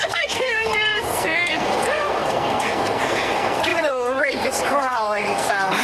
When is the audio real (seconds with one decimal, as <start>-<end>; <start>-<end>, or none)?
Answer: none